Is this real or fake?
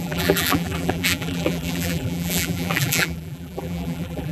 fake